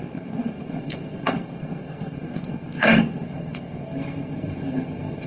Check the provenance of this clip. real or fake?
fake